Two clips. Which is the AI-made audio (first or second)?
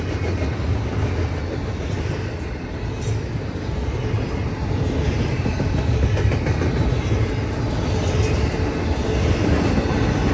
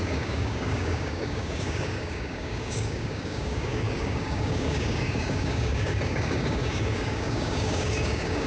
second